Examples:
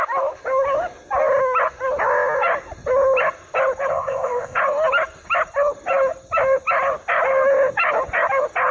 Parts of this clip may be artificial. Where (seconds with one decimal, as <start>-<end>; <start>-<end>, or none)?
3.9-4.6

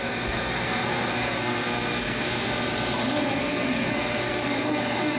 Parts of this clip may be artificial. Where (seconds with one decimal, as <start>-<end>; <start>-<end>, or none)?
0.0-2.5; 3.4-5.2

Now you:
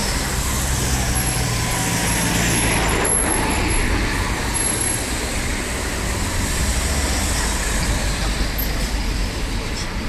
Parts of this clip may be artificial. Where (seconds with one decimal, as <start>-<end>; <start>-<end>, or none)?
none